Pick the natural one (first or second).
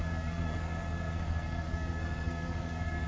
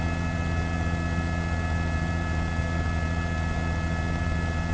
second